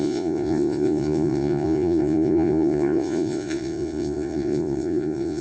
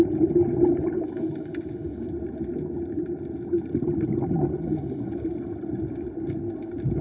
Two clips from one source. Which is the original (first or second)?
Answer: second